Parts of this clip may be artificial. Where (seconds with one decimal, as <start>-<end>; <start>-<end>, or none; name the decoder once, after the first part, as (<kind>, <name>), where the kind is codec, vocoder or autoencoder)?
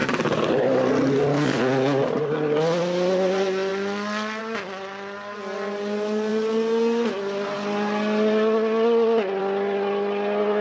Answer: 0.0-0.9 (vocoder, BigVGAN v2)